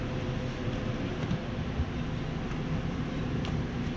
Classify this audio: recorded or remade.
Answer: recorded